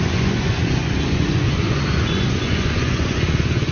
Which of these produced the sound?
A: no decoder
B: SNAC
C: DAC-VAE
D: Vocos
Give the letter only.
D